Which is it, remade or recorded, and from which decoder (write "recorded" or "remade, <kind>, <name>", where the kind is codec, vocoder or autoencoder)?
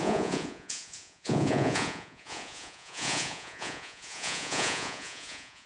remade, vocoder, Vocos